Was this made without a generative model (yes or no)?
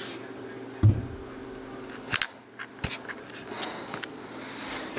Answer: yes